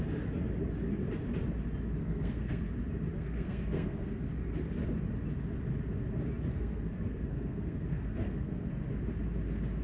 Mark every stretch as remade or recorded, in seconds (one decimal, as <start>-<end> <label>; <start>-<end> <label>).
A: 0.0-2.0 recorded; 2.0-2.7 remade; 2.7-3.2 recorded; 3.2-4.3 remade; 4.3-6.5 recorded; 6.5-8.7 remade; 8.7-9.8 recorded